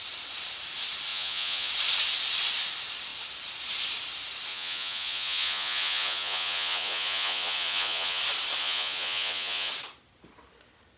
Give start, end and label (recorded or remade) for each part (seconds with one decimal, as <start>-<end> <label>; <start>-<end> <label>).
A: 0.0-1.1 recorded; 1.1-1.7 remade; 1.7-4.5 recorded; 4.5-8.2 remade; 8.2-8.6 recorded; 8.6-9.7 remade; 9.7-11.0 recorded